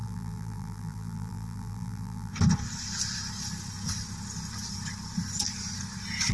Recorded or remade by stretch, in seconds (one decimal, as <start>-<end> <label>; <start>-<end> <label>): 0.0-2.3 remade; 2.3-6.3 recorded